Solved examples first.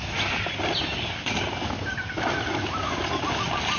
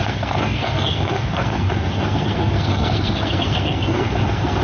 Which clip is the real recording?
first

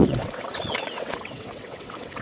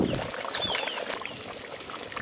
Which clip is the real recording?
second